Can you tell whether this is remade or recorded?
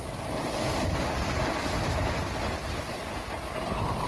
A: recorded